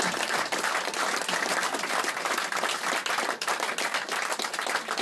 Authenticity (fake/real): real